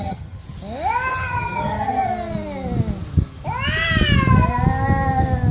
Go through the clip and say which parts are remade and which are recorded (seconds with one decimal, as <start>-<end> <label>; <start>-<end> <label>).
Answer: 0.0-0.4 remade; 0.4-1.1 recorded; 1.1-2.1 remade; 2.1-5.5 recorded